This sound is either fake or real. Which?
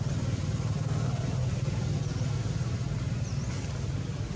real